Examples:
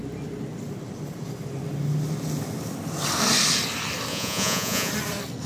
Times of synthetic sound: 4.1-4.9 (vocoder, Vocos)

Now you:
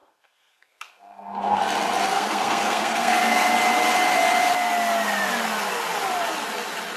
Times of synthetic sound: 0.0-1.6 (codec, SNAC); 2.1-3.5

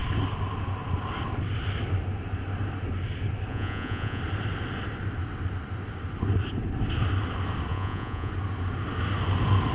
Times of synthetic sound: 3.5-4.2 (vocoder, Vocos); 7.7-8.3

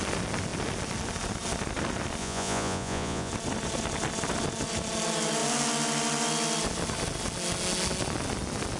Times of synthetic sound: 2.2-3.3 (vocoder, Vocos)

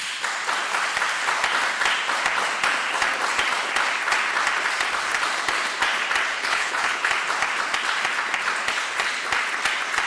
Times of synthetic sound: 6.3-7.1 (codec, HILCodec)

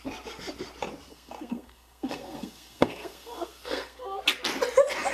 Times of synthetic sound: 1.1-4.2 (codec, SNAC)